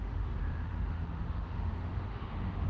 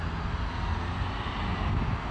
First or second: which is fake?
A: first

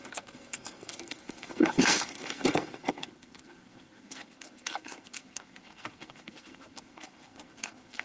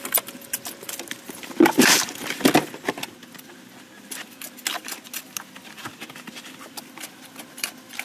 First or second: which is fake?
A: first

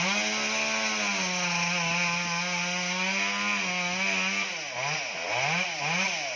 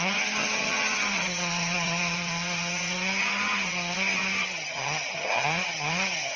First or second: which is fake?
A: second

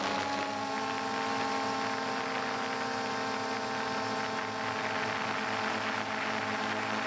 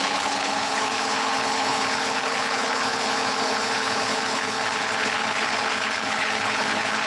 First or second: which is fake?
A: second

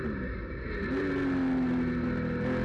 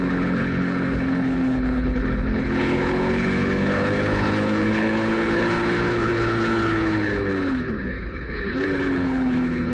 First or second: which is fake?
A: second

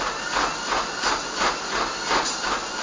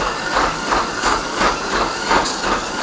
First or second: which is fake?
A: second